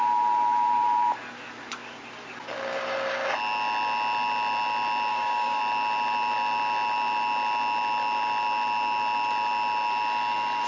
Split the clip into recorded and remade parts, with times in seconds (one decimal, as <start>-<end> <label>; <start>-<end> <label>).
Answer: 0.0-5.1 recorded; 5.1-5.6 remade; 5.6-10.7 recorded